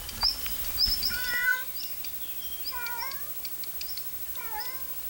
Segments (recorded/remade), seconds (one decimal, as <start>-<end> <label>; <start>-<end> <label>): 0.0-5.1 recorded